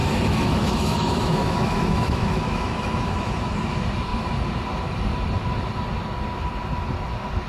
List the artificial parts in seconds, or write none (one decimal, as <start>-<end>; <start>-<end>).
0.0-3.3